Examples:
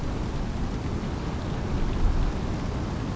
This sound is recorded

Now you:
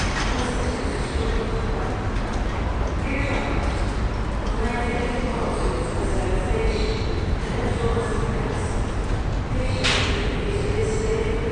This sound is recorded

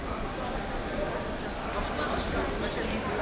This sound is recorded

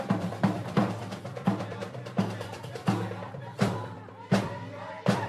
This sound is remade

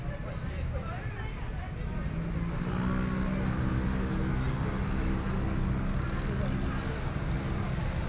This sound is recorded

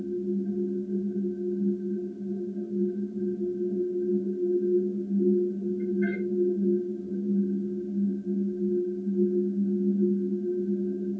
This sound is recorded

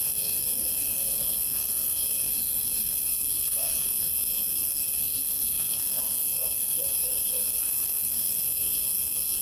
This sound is remade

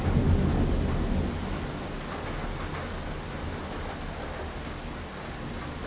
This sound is recorded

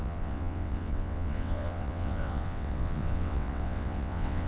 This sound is remade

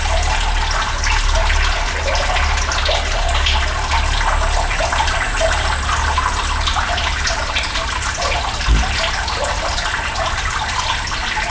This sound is recorded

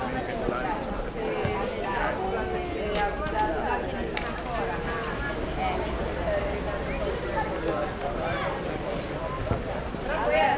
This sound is recorded